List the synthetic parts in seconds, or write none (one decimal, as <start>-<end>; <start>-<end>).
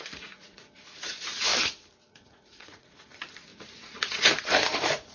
0.0-1.5; 2.1-5.1